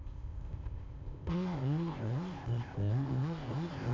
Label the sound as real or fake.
fake